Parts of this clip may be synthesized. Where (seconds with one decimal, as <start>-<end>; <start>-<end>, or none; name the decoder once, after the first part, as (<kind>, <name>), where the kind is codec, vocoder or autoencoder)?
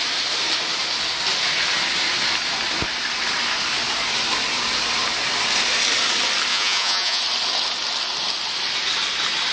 6.5-7.2 (vocoder, Vocos)